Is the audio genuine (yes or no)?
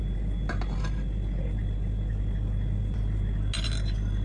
yes